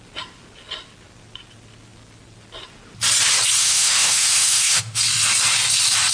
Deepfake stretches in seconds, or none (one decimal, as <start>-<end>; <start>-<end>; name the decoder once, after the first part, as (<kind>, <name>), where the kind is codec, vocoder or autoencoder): 3.6-5.0 (autoencoder, DAC-VAE)